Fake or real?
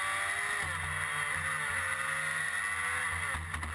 real